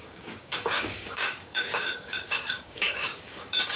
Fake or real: fake